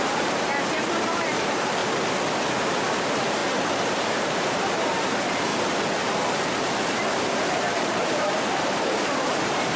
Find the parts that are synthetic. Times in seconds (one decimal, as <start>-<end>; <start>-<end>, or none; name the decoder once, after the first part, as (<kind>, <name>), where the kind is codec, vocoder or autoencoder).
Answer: 0.0-1.8 (vocoder, BigVGAN v2); 2.6-3.4; 3.9-5.5; 7.5-9.8